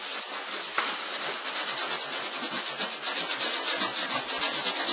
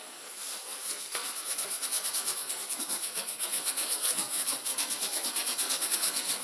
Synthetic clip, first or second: second